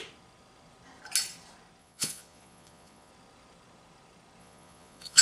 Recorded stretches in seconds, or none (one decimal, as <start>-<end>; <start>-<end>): 0.0-1.8; 3.1-4.4